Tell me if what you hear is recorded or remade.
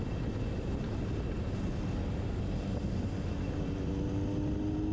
recorded